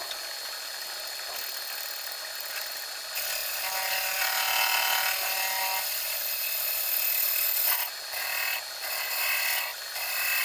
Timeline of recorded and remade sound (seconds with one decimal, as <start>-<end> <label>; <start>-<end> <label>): 0.0-3.4 recorded; 3.4-4.2 remade; 4.2-9.7 recorded; 9.7-10.4 remade